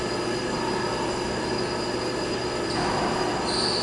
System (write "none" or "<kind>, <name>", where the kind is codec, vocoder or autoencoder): none